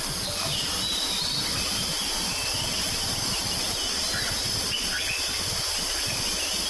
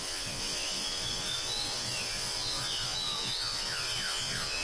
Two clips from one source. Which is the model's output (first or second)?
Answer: second